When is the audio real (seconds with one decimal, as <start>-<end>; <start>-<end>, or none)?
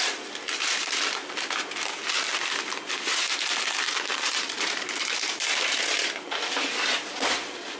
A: 0.0-4.1; 6.5-7.8